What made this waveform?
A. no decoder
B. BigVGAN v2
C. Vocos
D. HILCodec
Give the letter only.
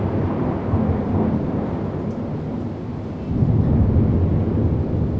A